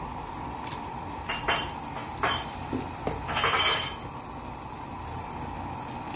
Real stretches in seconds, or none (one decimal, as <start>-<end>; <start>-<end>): 0.0-6.2